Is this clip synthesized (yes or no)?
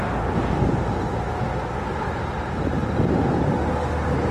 no